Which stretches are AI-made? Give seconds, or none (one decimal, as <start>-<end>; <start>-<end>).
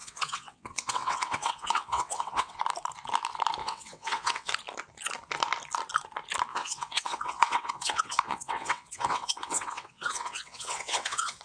0.0-2.6; 3.6-4.5; 6.5-11.4